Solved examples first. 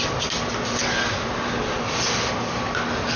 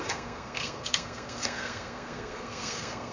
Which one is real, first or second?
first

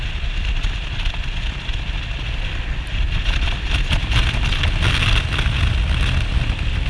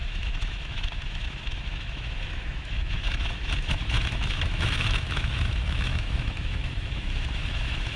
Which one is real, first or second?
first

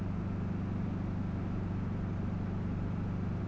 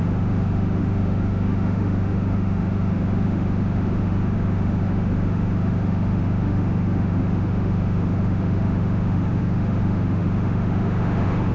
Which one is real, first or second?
first